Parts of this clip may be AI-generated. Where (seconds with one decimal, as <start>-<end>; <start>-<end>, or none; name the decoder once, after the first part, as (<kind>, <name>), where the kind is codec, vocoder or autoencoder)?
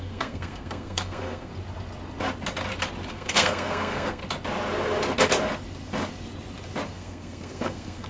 0.0-1.5 (codec, SNAC); 3.1-4.2; 6.9-8.1